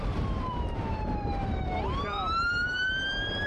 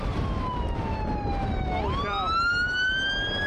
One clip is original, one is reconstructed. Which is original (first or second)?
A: second